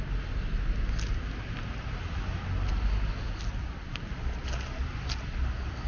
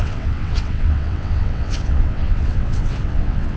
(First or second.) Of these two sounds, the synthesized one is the second